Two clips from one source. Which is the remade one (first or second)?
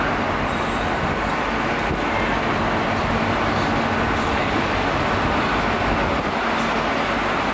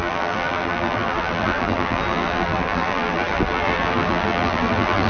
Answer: second